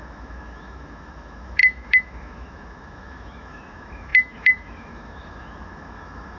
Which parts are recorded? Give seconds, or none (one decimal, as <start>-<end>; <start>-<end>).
none